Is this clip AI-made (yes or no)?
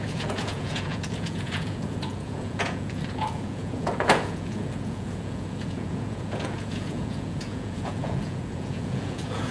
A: yes